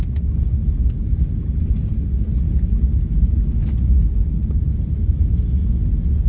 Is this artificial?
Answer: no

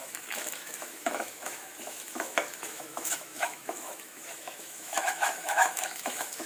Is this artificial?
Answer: yes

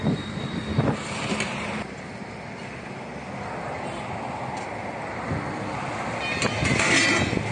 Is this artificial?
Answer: no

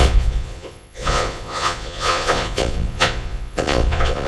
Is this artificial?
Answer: yes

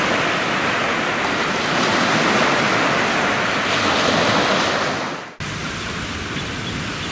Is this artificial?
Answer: no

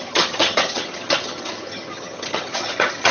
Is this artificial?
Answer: yes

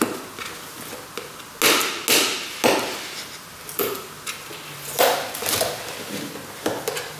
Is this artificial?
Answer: no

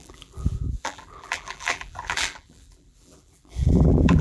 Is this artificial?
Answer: yes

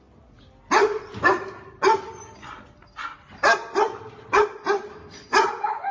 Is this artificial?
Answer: no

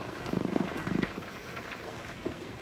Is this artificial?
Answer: yes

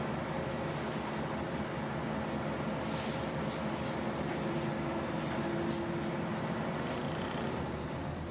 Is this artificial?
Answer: no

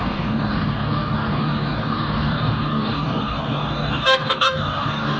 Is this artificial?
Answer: yes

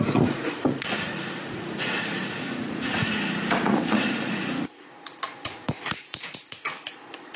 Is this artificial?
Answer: yes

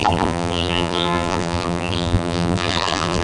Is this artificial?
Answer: yes